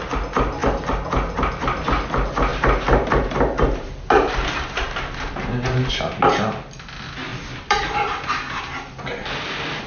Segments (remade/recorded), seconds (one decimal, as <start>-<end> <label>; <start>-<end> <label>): 0.0-2.5 recorded; 2.5-5.9 remade; 5.9-7.3 recorded; 7.3-8.6 remade; 8.6-9.9 recorded